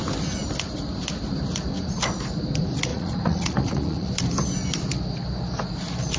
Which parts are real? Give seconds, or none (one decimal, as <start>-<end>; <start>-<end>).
0.0-2.9; 4.1-6.2